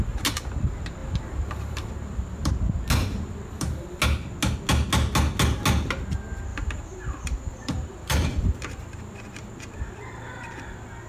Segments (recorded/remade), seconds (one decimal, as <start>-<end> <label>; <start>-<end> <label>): 0.0-1.0 recorded; 1.0-2.5 remade; 2.5-3.0 recorded; 3.0-4.0 remade; 4.0-6.5 recorded; 6.5-9.5 remade; 9.5-11.1 recorded